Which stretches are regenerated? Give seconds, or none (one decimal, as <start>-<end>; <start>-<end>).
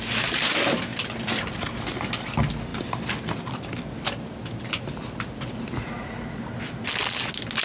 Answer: 0.9-1.6; 2.7-6.2